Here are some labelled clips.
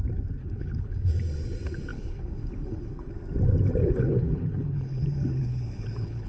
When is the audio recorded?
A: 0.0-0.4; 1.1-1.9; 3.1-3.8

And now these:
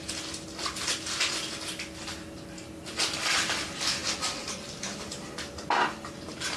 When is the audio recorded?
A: 0.0-6.6

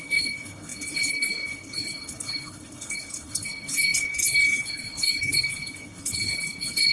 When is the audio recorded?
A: none